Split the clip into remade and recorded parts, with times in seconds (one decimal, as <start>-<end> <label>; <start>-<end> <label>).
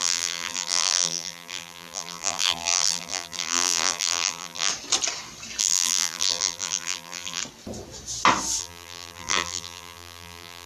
0.0-4.7 remade; 4.7-5.6 recorded; 5.6-7.4 remade; 7.4-8.6 recorded; 8.6-10.7 remade